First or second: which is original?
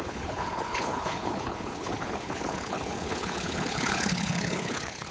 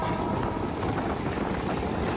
second